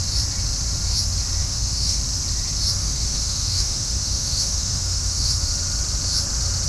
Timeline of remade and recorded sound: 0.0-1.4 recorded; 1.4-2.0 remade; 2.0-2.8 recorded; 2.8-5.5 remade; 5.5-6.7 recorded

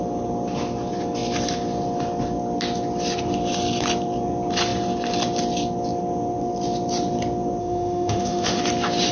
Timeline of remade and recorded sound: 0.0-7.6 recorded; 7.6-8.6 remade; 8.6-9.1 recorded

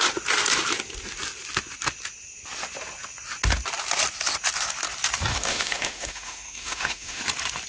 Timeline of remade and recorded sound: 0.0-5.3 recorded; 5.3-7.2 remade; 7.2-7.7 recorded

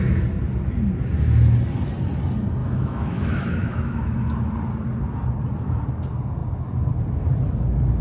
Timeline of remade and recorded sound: 0.0-2.6 recorded; 2.6-4.5 remade; 4.5-8.0 recorded

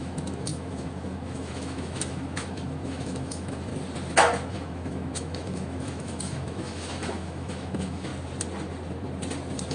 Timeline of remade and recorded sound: 0.0-3.7 remade; 3.7-4.5 recorded; 4.5-8.1 remade; 8.1-9.7 recorded